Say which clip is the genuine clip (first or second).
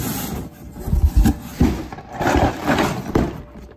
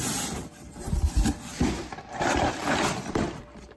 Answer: first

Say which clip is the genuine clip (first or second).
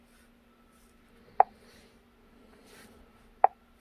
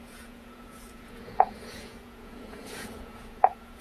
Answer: first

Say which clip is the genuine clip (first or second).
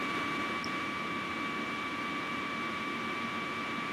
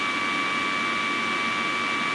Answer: second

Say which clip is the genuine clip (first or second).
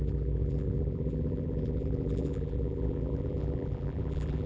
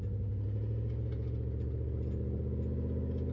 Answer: second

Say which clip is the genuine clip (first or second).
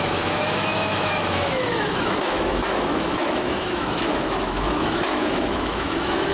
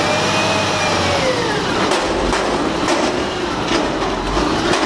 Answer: second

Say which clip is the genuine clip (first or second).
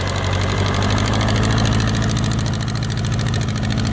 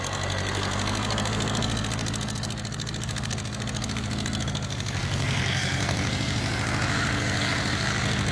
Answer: first